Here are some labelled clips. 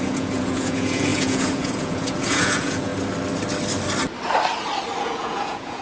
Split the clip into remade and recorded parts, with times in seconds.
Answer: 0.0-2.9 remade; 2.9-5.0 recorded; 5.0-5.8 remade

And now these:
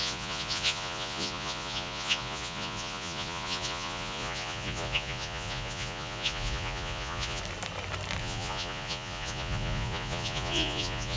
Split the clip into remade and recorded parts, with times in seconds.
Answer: 0.0-7.4 remade; 7.4-8.2 recorded; 8.2-11.2 remade

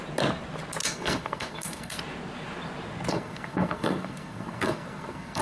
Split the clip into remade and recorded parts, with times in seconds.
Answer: 0.0-0.8 recorded; 0.8-2.0 remade; 2.0-3.1 recorded; 3.1-5.4 remade

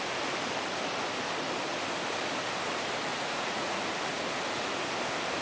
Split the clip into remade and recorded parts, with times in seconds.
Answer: 0.0-3.1 recorded; 3.1-3.8 remade; 3.8-5.4 recorded